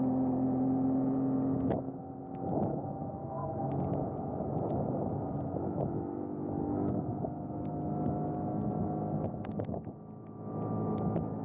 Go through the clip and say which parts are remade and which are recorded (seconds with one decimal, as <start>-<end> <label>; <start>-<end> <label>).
0.0-2.7 recorded; 2.7-3.7 remade; 3.7-6.6 recorded; 6.6-7.2 remade; 7.2-11.4 recorded